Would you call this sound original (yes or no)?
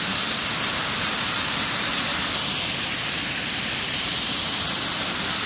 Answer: yes